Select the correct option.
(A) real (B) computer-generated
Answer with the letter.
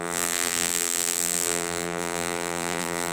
B